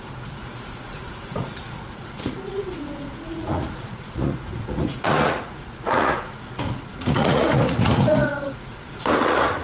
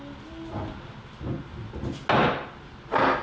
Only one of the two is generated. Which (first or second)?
first